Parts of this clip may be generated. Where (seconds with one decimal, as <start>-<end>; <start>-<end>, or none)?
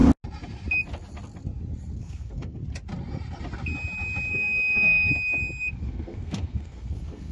1.9-2.6; 4.3-5.1; 5.8-7.3